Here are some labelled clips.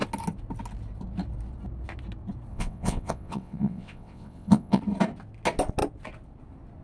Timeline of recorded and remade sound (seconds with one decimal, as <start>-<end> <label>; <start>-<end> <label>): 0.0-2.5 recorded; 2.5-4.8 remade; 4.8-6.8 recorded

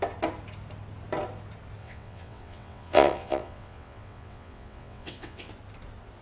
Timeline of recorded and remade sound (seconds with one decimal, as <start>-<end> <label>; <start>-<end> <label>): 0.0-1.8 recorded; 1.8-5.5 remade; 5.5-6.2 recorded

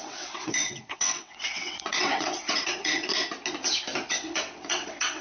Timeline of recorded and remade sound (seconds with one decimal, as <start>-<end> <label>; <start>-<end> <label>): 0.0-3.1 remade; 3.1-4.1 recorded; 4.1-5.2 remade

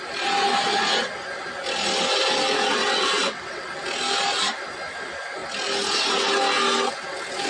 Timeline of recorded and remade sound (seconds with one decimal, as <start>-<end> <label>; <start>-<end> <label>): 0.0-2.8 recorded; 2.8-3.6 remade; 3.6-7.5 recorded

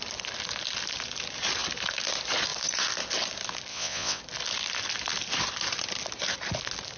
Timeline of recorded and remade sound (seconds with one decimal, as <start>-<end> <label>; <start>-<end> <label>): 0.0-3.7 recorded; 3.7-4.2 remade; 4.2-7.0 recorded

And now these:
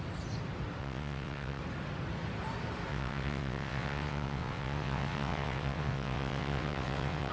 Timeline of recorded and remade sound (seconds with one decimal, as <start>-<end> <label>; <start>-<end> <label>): 0.0-0.8 recorded; 0.8-1.6 remade; 1.6-2.9 recorded; 2.9-7.3 remade